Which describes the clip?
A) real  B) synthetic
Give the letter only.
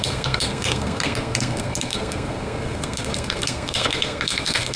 B